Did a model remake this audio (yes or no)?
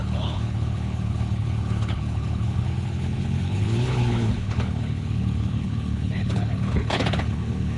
yes